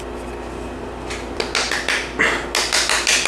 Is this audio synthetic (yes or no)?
no